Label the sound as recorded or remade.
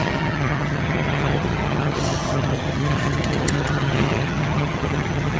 remade